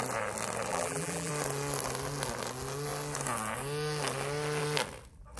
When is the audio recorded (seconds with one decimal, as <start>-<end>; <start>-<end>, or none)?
0.0-0.7; 1.3-5.4